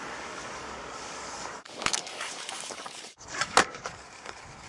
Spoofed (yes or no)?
yes